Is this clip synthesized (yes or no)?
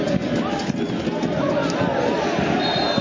no